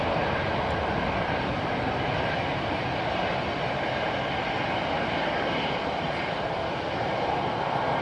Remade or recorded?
recorded